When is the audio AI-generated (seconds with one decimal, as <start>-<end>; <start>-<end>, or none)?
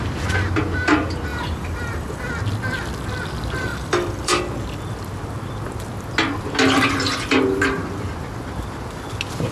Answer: 1.3-2.3; 3.7-4.4